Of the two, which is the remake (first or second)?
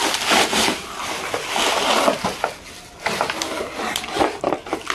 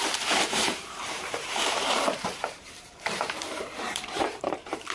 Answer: second